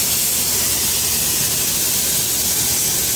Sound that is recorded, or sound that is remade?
remade